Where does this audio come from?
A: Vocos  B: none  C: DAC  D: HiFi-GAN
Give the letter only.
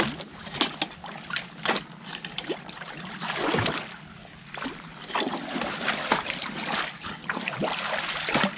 B